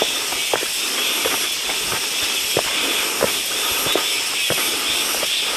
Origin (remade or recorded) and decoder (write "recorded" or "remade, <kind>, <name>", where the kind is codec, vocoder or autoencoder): recorded